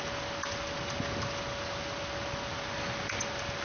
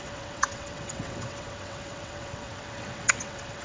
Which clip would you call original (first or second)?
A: first